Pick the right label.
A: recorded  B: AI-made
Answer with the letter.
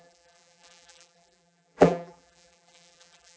B